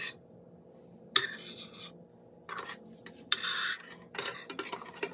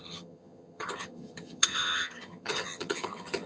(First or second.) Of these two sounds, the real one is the first